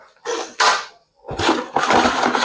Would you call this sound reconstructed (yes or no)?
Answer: no